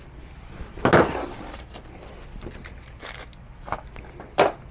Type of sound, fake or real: real